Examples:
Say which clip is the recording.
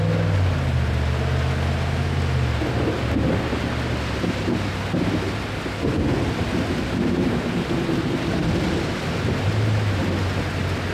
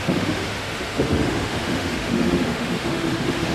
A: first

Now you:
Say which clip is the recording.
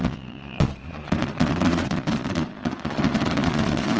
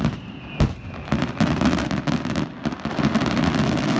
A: second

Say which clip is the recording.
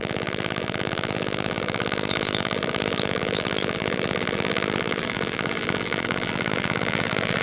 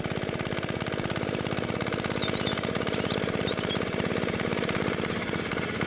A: second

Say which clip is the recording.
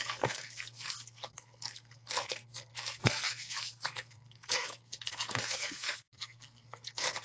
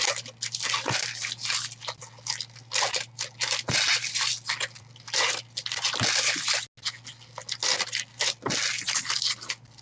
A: second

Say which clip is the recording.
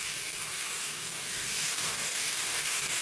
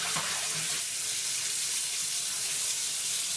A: second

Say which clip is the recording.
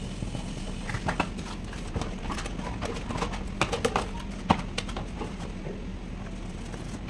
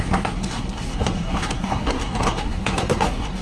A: first